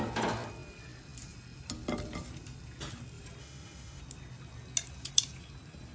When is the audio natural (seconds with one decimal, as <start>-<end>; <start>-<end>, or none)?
0.0-3.4; 4.0-5.9